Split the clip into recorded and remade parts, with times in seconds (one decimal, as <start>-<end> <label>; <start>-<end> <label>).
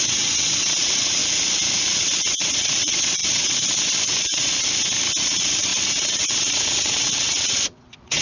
0.0-1.2 remade; 1.2-2.0 recorded; 2.0-4.5 remade; 4.5-5.2 recorded; 5.2-8.2 remade